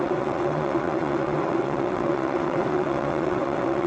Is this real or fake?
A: fake